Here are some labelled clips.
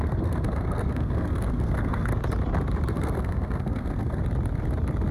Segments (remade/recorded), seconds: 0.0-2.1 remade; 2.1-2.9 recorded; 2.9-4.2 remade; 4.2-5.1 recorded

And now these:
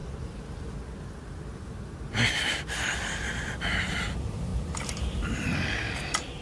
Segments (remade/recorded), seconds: 0.0-6.4 recorded

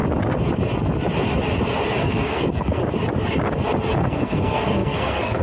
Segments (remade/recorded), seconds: 0.0-2.0 recorded; 2.0-2.8 remade; 2.8-4.0 recorded; 4.0-5.4 remade

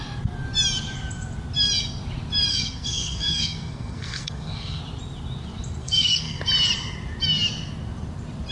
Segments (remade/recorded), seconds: 0.0-2.5 recorded; 2.5-4.8 remade; 4.8-5.8 recorded; 5.8-6.4 remade; 6.4-8.5 recorded

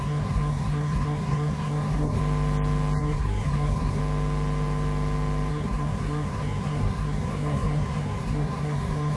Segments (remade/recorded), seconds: 0.0-2.2 remade; 2.2-3.0 recorded; 3.0-4.0 remade; 4.0-5.5 recorded; 5.5-9.2 remade

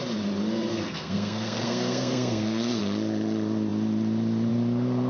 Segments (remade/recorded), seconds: 0.0-0.7 recorded; 0.7-2.8 remade; 2.8-5.1 recorded

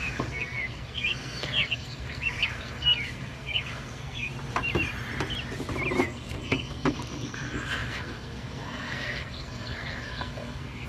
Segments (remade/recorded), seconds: 0.0-4.3 remade; 4.3-6.0 recorded; 6.0-10.9 remade